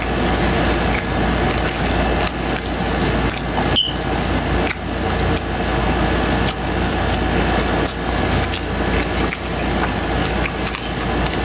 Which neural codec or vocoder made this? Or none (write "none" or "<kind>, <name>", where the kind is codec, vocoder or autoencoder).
none